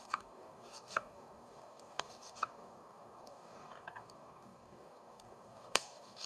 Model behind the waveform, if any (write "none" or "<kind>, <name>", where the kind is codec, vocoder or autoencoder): codec, DAC